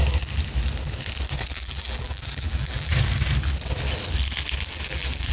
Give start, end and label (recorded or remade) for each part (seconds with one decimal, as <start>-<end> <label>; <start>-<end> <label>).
0.0-1.5 recorded; 1.5-2.9 remade; 2.9-4.7 recorded; 4.7-5.3 remade